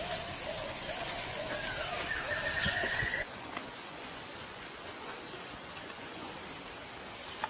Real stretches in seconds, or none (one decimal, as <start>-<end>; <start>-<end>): 0.0-0.6; 1.5-2.6; 6.3-7.5

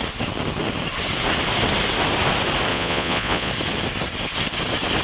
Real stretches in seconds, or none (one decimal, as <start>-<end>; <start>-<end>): 0.0-2.7; 3.5-5.0

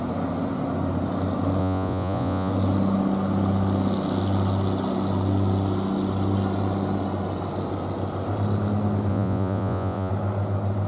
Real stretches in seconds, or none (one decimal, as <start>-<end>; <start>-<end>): 0.0-1.6; 2.5-9.1; 10.1-10.9

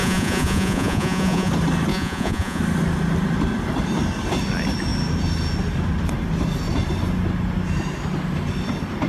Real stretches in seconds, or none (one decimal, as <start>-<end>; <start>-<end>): 1.5-1.9; 2.6-9.1

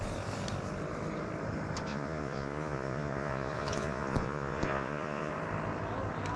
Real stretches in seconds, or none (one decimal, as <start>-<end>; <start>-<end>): 0.0-1.9; 5.3-6.4

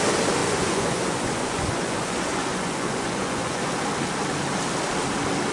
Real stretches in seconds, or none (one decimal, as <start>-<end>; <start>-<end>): 0.0-0.4; 3.7-5.5